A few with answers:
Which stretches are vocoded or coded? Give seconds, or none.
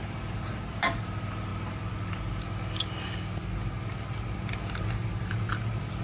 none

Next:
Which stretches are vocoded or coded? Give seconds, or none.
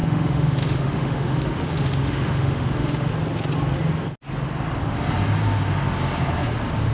0.0-3.1 (autoencoder, DAC-VAE)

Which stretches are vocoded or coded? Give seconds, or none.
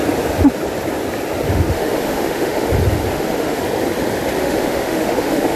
1.5-2.7 (autoencoder, DAC-VAE); 3.1-3.6; 4.4-5.6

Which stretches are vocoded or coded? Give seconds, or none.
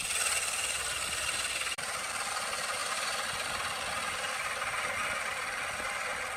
none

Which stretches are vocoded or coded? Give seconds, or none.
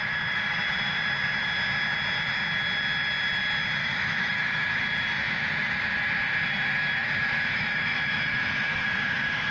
3.8-4.8 (autoencoder, DAC-VAE); 7.0-9.5